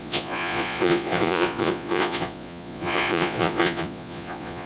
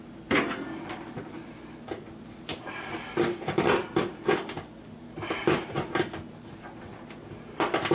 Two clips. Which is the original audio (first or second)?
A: second